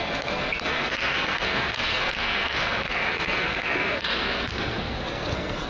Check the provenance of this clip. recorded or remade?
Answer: remade